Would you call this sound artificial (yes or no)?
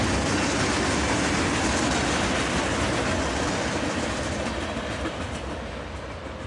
no